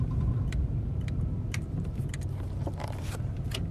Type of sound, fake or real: fake